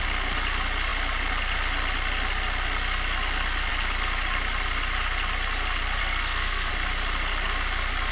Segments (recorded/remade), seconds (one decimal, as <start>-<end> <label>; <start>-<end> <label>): 0.0-6.0 recorded; 6.0-6.7 remade; 6.7-8.1 recorded